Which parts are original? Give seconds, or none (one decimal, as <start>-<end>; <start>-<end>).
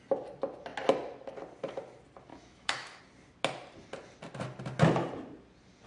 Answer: 0.0-2.3; 3.0-5.9